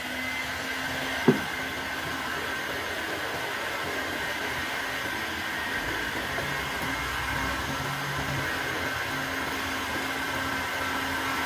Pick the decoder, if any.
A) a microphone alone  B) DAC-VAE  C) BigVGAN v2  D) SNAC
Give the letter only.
A